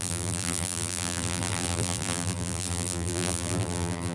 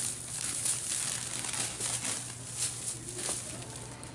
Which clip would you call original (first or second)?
second